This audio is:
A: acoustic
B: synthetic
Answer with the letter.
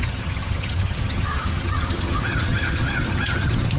B